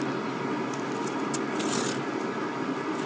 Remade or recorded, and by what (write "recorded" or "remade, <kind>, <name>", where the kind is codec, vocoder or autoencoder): recorded